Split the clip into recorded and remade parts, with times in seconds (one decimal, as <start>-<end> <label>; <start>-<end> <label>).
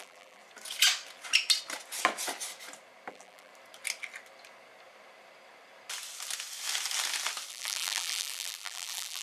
0.0-0.4 remade; 0.4-3.1 recorded; 3.1-3.5 remade; 3.5-7.5 recorded; 7.5-9.2 remade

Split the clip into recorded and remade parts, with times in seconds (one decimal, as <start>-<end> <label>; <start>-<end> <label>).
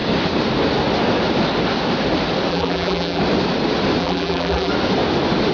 0.0-2.5 recorded; 2.5-3.2 remade; 3.2-4.0 recorded; 4.0-4.7 remade; 4.7-5.5 recorded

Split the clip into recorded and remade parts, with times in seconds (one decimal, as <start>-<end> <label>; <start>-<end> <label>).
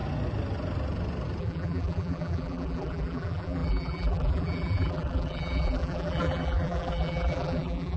0.0-1.4 recorded; 1.4-8.0 remade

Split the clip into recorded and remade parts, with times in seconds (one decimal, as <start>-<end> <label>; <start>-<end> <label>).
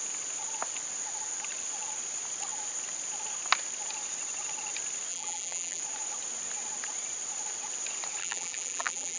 0.0-5.1 recorded; 5.1-5.8 remade; 5.8-8.2 recorded; 8.2-9.2 remade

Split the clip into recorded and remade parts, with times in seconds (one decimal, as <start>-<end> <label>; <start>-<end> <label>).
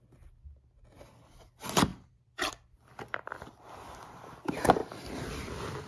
0.0-1.9 recorded; 1.9-4.2 remade; 4.2-4.8 recorded; 4.8-5.5 remade; 5.5-5.9 recorded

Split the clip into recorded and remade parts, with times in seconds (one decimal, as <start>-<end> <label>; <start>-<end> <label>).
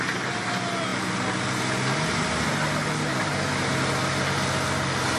0.0-5.2 recorded